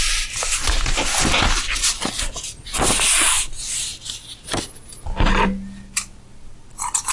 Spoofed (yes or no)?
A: no